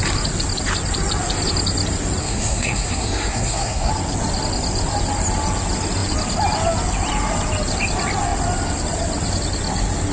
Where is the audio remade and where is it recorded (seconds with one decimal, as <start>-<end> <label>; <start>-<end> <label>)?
0.0-2.2 recorded; 2.2-3.9 remade; 3.9-10.1 recorded